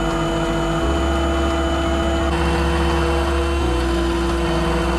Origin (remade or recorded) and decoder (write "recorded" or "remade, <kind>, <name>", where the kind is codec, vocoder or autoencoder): recorded